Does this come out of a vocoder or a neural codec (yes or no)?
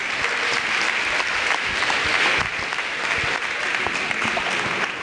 no